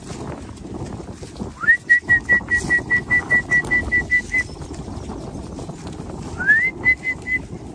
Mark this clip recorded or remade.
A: recorded